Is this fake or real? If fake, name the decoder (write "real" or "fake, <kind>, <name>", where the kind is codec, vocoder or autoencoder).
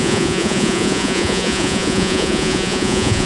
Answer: fake, vocoder, Vocos